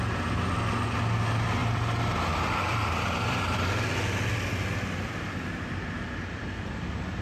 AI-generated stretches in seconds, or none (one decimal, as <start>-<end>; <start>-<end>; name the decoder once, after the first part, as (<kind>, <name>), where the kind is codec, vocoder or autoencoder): 1.6-3.7 (vocoder, BigVGAN v2)